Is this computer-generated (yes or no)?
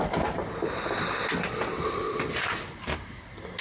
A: no